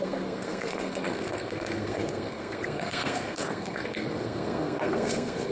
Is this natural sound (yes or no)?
no